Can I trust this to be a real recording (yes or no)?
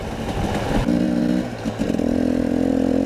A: yes